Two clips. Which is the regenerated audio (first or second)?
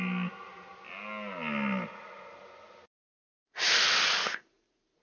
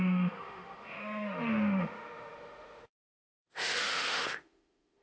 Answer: second